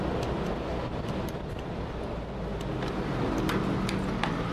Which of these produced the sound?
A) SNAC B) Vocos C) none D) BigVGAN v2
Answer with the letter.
C